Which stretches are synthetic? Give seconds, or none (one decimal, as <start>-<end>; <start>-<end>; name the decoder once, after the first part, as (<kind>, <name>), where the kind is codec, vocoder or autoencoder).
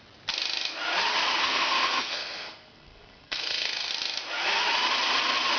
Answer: 1.4-3.9 (codec, SNAC)